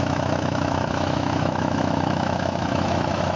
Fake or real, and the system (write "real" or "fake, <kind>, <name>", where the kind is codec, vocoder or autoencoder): fake, autoencoder, DAC-VAE